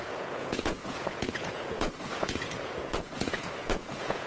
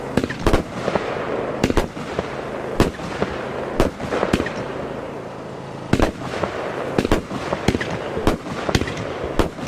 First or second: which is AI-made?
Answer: first